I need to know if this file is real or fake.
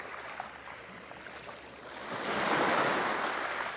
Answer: real